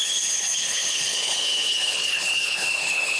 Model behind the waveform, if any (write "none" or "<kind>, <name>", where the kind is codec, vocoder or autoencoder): codec, HILCodec